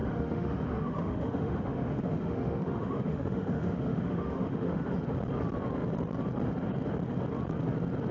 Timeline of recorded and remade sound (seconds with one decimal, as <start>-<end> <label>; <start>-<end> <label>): 0.0-4.9 remade; 4.9-8.1 recorded